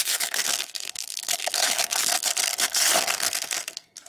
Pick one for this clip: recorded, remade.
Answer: remade